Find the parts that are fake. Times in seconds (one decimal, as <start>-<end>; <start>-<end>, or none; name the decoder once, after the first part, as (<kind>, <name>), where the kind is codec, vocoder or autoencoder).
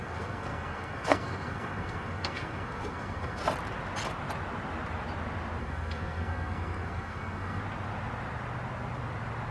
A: 0.0-3.4 (codec, SNAC); 5.6-7.6